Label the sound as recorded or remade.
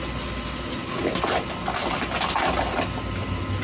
recorded